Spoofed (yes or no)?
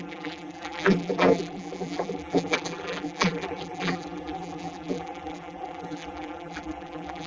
yes